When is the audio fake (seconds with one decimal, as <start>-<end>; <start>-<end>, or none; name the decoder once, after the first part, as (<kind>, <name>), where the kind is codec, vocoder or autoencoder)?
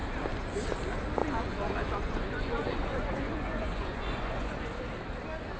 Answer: 1.2-4.6 (vocoder, Vocos)